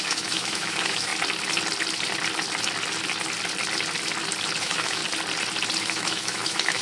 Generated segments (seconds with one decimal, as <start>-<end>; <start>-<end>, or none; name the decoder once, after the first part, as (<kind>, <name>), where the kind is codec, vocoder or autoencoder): 0.0-1.1 (autoencoder, DAC-VAE); 4.6-5.0; 5.8-6.8